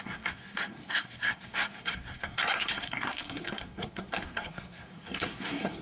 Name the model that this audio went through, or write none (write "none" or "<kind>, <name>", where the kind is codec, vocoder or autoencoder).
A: codec, SNAC